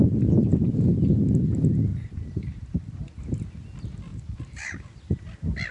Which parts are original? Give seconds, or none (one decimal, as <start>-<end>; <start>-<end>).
0.0-1.9; 3.2-4.1; 4.9-5.7